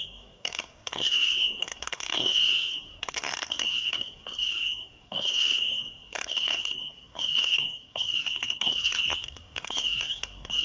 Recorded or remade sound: remade